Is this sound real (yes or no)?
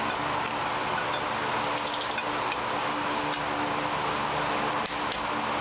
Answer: yes